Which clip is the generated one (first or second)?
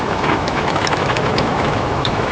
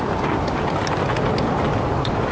first